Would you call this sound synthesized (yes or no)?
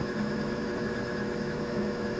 yes